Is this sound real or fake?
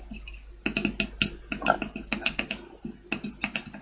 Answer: real